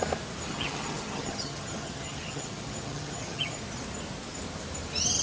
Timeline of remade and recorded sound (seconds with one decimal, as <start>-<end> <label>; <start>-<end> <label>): 0.0-0.5 recorded; 0.5-3.6 remade; 3.6-5.2 recorded